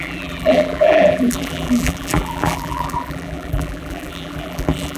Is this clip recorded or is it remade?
remade